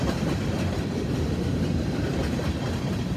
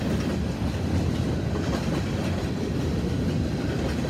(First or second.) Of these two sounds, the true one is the second